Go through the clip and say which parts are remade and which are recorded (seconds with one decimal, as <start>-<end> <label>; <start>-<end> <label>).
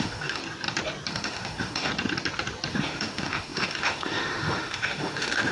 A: 0.0-0.4 remade; 0.4-1.1 recorded; 1.1-1.9 remade; 1.9-2.7 recorded; 2.7-5.5 remade